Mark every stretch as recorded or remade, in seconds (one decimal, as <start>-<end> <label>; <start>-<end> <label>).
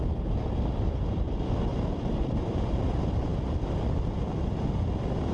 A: 0.0-5.3 recorded